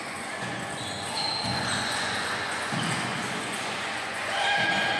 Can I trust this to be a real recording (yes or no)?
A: no